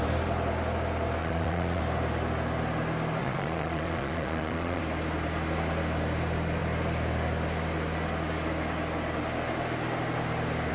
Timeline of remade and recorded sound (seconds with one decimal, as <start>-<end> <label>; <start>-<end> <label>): 0.0-1.2 recorded; 1.2-1.8 remade; 1.8-3.2 recorded; 3.2-4.8 remade; 4.8-10.7 recorded